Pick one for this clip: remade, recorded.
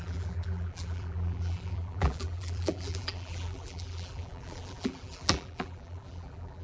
remade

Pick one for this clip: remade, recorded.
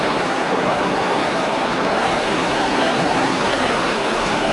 remade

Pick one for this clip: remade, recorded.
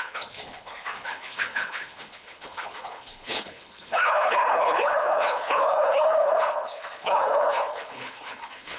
remade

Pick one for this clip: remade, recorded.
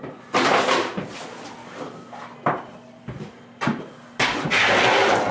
recorded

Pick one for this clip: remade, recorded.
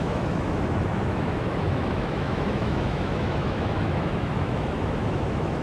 remade